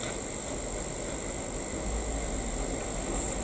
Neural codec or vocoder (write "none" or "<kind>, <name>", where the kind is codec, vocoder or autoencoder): none